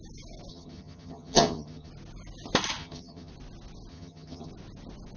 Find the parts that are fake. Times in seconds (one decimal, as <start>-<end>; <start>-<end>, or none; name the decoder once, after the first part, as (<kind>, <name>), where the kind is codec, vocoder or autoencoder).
0.5-1.9 (vocoder, HiFi-GAN); 2.8-3.3; 3.9-4.5